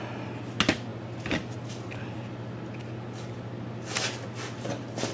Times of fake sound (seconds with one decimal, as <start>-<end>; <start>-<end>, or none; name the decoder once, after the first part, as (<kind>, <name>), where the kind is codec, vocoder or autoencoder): none